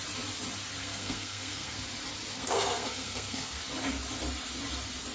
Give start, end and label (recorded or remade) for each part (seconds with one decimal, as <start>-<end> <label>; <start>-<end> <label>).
0.0-0.8 recorded; 0.8-1.8 remade; 1.8-2.3 recorded; 2.3-3.6 remade; 3.6-5.1 recorded